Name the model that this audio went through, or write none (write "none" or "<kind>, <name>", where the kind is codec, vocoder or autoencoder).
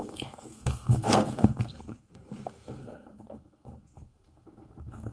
codec, SNAC